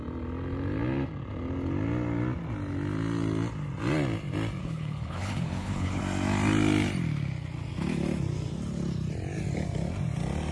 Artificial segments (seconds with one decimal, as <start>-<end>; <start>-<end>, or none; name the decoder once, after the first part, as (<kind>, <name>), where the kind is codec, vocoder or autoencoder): 4.6-6.0 (codec, HILCodec)